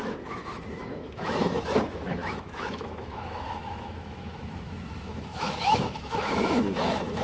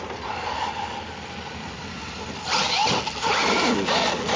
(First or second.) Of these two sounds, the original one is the second